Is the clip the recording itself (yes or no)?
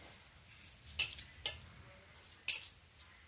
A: yes